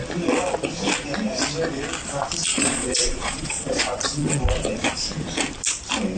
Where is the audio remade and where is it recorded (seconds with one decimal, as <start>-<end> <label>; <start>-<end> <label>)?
0.0-2.5 recorded; 2.5-4.4 remade; 4.4-6.2 recorded